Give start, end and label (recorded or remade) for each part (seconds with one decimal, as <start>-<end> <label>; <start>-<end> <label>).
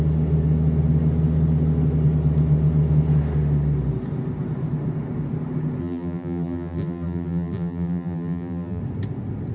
0.0-5.8 recorded; 5.8-8.8 remade; 8.8-9.5 recorded